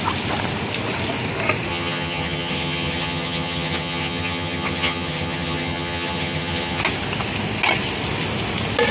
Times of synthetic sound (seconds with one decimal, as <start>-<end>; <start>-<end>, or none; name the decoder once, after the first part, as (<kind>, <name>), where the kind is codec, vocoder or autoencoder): 1.7-6.8 (vocoder, HiFi-GAN)